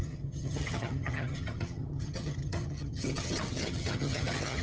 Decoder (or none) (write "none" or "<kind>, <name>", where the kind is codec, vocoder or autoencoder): vocoder, HiFi-GAN